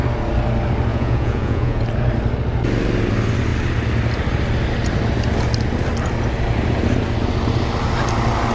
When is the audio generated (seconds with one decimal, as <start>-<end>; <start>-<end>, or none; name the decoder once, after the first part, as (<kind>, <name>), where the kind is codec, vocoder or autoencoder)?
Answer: 0.9-1.8 (vocoder, Vocos)